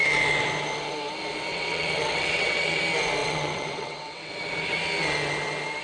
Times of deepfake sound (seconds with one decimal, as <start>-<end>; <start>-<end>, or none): 1.5-2.8; 3.2-4.3